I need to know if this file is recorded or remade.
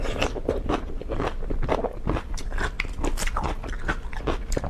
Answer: recorded